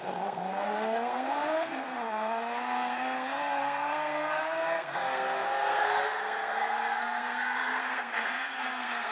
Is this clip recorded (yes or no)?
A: no